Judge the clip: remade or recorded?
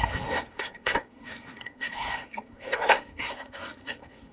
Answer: remade